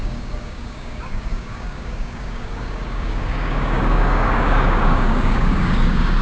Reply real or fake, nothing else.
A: fake